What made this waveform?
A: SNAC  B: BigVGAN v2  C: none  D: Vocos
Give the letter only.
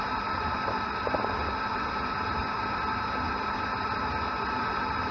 C